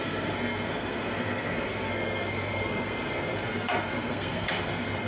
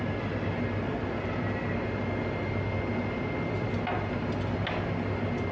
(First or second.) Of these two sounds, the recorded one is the second